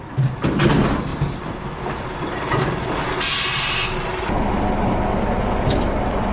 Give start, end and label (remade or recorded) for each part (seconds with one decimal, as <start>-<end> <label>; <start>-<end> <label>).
0.0-6.3 recorded